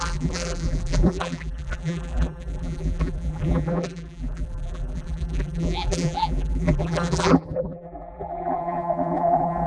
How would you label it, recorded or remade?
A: remade